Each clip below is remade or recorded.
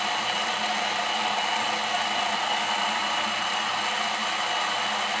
recorded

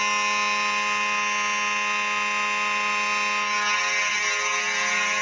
recorded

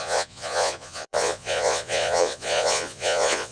remade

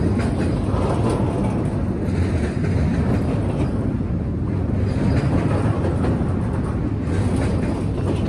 recorded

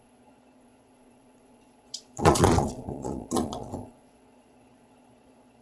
remade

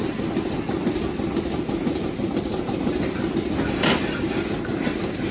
recorded